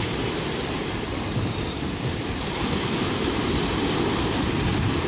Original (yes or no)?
no